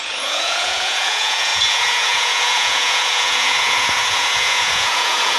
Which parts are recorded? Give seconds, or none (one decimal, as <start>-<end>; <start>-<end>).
none